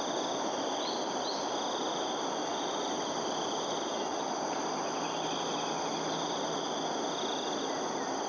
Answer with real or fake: real